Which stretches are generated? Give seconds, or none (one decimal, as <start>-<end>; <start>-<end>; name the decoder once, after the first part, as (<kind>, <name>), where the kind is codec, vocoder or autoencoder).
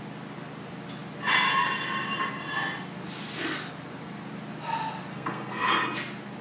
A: 5.1-5.6 (codec, SNAC)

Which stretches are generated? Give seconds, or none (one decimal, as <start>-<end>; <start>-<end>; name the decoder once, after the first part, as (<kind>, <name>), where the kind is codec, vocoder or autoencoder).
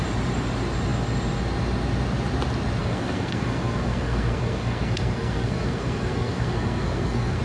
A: 2.8-7.4 (codec, SNAC)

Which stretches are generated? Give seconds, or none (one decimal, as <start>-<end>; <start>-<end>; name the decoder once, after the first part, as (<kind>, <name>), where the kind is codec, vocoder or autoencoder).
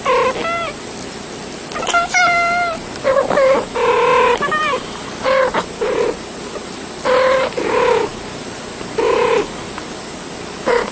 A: none